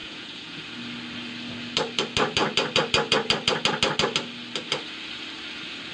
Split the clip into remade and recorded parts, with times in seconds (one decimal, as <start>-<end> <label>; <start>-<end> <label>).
0.0-0.6 remade; 0.6-5.9 recorded